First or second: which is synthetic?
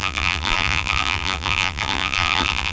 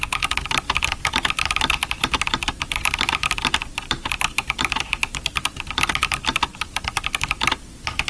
first